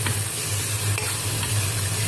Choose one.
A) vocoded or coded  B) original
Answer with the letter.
B